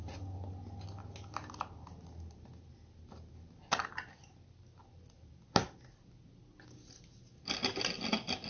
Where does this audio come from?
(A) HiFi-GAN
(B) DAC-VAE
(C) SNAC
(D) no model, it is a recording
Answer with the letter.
D